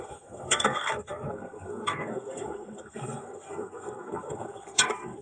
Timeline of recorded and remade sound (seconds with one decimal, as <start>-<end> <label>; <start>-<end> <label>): 0.0-5.2 remade

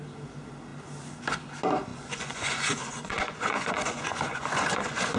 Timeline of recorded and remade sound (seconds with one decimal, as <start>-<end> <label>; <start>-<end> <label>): 0.0-1.9 recorded; 1.9-5.2 remade